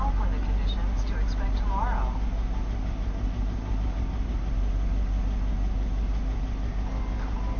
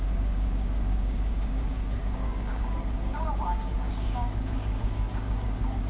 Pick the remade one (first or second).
second